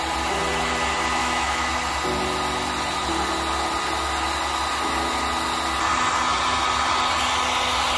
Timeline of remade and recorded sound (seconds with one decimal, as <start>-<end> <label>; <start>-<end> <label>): 0.0-1.2 recorded; 1.2-1.7 remade; 1.7-8.0 recorded